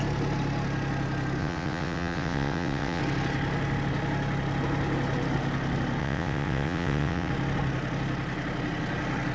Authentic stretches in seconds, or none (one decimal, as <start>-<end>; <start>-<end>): 0.0-1.4; 3.0-6.0; 7.3-9.3